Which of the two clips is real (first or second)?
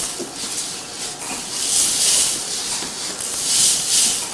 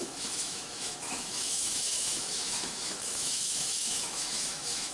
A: first